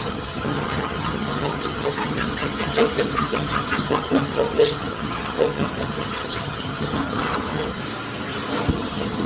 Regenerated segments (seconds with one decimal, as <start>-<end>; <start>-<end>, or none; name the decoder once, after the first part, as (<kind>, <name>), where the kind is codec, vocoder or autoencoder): 0.0-7.8 (vocoder, HiFi-GAN); 8.7-9.3